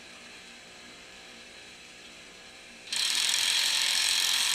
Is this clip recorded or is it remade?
remade